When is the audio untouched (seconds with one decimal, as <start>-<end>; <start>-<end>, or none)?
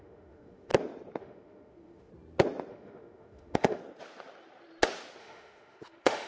0.7-1.2; 2.1-2.7; 3.8-5.2